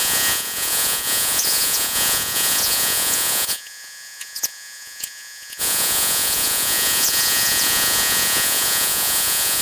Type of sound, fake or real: fake